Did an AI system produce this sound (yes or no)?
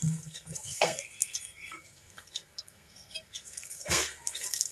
yes